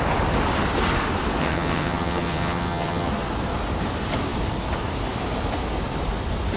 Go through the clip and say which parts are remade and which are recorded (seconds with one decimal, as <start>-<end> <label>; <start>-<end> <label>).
0.0-1.4 recorded; 1.4-3.1 remade; 3.1-6.6 recorded